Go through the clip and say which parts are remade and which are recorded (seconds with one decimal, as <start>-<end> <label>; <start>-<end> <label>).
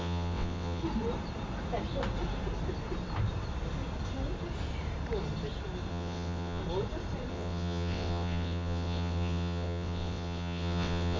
0.0-0.8 remade; 0.8-5.9 recorded; 5.9-6.6 remade; 6.6-7.3 recorded; 7.3-11.2 remade